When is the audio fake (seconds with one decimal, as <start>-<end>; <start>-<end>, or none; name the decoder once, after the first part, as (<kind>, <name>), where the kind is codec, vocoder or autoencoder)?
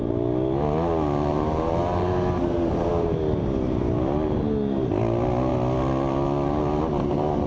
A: 1.3-2.9 (vocoder, BigVGAN v2)